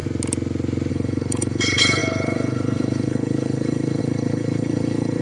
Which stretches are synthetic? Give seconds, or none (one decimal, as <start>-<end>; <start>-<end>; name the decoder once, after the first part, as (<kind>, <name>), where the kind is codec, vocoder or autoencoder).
0.9-5.2 (codec, HILCodec)